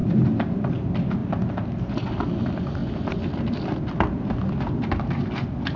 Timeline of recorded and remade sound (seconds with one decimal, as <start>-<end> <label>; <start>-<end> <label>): 0.0-1.2 recorded; 1.2-2.4 remade; 2.4-2.8 recorded; 2.8-5.8 remade